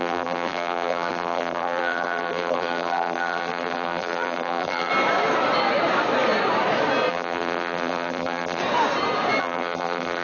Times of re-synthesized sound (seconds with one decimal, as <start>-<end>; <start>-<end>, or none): 0.0-4.9; 7.1-8.6; 9.4-10.2